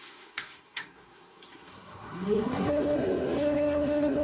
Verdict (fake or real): fake